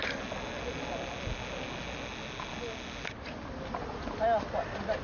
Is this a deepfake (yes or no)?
no